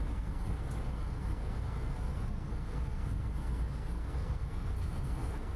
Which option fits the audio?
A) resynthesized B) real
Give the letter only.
A